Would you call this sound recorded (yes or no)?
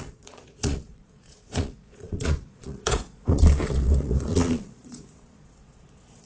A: no